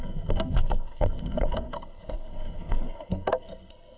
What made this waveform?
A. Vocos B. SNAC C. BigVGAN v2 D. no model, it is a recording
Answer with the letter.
B